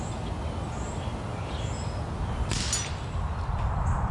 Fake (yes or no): no